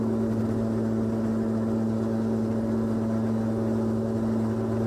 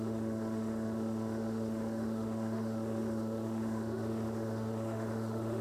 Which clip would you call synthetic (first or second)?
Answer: second